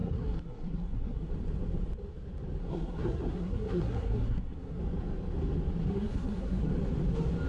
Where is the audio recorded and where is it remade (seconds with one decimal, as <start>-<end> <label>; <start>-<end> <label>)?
0.0-1.3 remade; 1.3-2.6 recorded; 2.6-4.8 remade; 4.8-5.8 recorded; 5.8-6.6 remade; 6.6-7.5 recorded